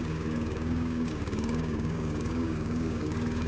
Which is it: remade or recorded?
remade